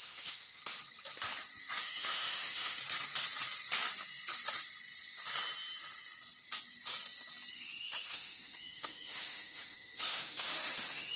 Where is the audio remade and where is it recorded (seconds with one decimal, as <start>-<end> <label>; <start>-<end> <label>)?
0.0-0.6 remade; 0.6-1.8 recorded; 1.8-2.8 remade; 2.8-7.5 recorded; 7.5-11.2 remade